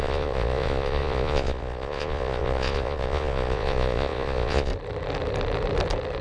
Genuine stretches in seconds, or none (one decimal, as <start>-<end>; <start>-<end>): 4.7-6.2